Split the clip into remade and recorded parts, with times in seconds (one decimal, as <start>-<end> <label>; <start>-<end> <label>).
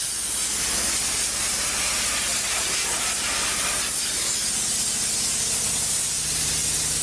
0.0-2.3 recorded; 2.3-4.2 remade; 4.2-7.0 recorded